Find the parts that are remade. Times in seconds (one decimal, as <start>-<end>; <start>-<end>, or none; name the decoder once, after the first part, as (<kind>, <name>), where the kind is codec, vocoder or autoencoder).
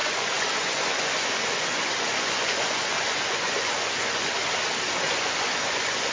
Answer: 0.0-4.4 (vocoder, Vocos); 5.1-6.1